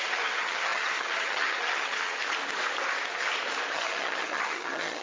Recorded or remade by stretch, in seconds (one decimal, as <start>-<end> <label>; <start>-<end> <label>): 0.0-2.2 remade; 2.2-3.7 recorded; 3.7-5.0 remade